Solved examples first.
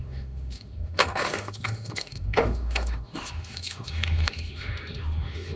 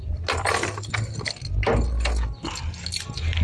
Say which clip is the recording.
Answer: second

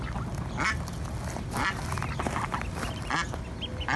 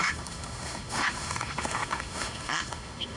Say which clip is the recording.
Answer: first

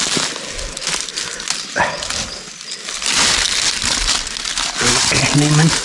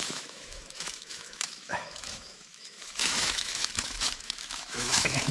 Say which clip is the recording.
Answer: first